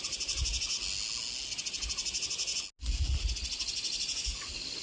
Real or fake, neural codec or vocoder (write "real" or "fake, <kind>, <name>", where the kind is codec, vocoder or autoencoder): real